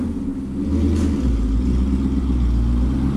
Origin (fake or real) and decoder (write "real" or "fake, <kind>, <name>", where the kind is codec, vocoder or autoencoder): real